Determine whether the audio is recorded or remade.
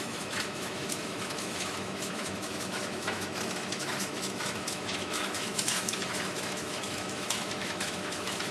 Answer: remade